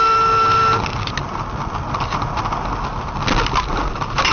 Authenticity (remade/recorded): recorded